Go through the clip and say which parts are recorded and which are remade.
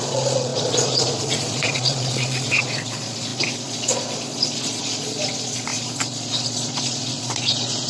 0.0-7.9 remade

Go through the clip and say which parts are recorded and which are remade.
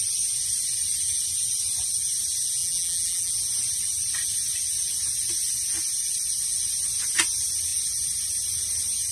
0.0-2.6 recorded; 2.6-3.3 remade; 3.3-9.1 recorded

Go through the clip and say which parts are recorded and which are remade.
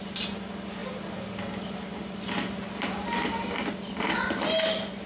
0.0-5.1 recorded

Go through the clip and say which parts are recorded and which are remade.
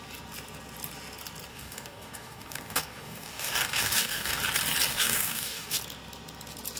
0.0-1.5 recorded; 1.5-4.4 remade; 4.4-4.9 recorded; 4.9-5.8 remade; 5.8-6.8 recorded